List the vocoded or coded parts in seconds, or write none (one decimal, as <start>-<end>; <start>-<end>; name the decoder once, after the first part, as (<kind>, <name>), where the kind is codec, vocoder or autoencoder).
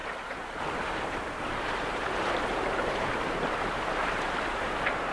0.0-5.1 (vocoder, BigVGAN v2)